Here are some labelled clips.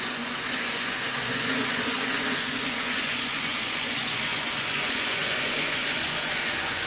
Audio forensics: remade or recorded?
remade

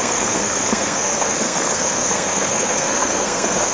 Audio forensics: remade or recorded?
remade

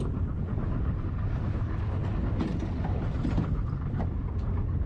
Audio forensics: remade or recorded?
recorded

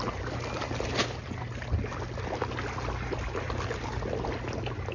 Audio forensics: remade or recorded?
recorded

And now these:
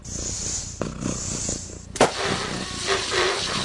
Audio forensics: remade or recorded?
recorded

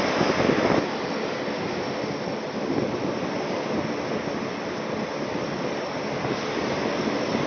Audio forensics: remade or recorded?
recorded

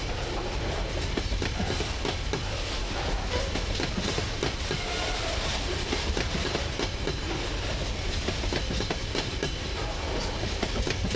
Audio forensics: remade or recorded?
recorded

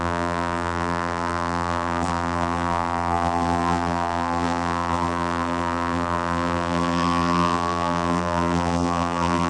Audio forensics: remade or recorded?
remade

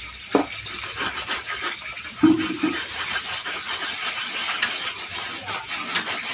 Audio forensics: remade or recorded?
recorded